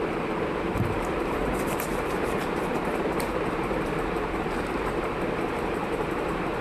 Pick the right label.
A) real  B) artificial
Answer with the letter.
B